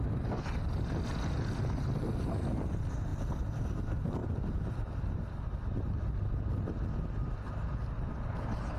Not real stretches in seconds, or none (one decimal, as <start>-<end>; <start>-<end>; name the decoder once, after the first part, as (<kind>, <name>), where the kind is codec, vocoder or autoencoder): none